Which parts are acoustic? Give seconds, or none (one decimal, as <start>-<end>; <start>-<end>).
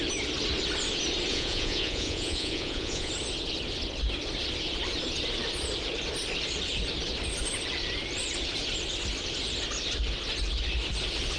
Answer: 0.0-1.3; 3.1-11.4